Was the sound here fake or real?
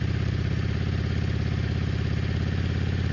real